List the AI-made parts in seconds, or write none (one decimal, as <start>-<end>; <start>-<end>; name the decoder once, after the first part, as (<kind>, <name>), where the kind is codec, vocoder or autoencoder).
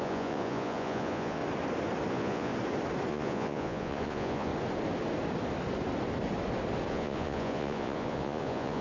0.0-1.4 (vocoder, Vocos); 2.1-2.5; 3.1-4.5; 6.9-8.8